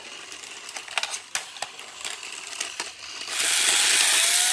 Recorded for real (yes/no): yes